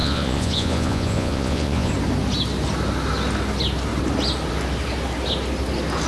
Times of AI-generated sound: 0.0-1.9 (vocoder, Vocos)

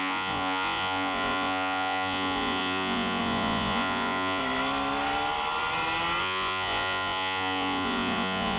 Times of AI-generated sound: 0.0-4.4 (vocoder, Vocos); 6.2-8.6

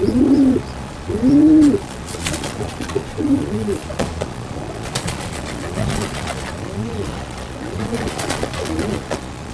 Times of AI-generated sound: 0.0-9.5 (vocoder, Vocos)